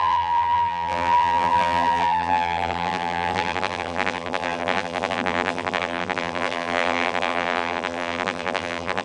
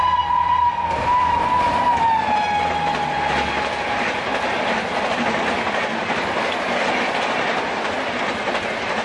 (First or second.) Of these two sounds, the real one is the second